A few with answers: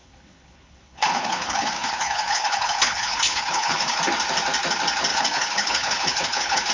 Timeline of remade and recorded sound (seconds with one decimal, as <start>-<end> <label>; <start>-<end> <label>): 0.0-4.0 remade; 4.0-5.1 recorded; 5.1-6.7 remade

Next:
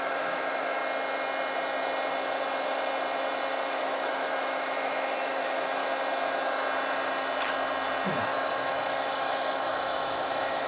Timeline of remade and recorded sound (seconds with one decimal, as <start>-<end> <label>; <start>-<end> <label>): 0.0-0.8 remade; 0.8-3.7 recorded; 3.7-5.8 remade; 5.8-8.1 recorded; 8.1-10.7 remade

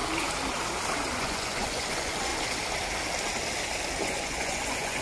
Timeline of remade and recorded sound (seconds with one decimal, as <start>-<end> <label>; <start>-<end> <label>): 0.0-1.2 recorded; 1.2-2.3 remade; 2.3-4.0 recorded; 4.0-5.0 remade